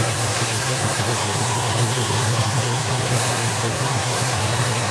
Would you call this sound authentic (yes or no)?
no